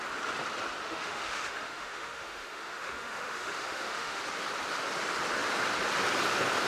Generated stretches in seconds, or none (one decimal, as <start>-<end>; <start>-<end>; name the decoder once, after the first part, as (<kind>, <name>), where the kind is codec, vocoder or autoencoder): 0.8-4.2 (autoencoder, DAC-VAE)